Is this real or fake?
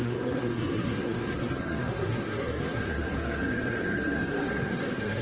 fake